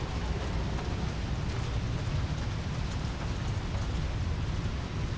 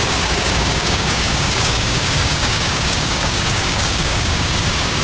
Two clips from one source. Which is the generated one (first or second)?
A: second